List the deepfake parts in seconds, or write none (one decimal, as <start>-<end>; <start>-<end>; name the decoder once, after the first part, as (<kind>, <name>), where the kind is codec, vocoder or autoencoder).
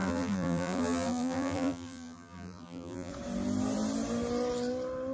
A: 0.0-3.1 (vocoder, BigVGAN v2)